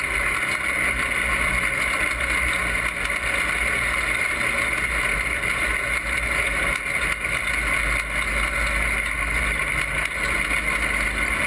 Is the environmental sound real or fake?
real